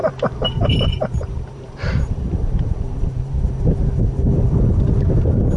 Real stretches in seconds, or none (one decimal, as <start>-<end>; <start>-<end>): 3.4-5.6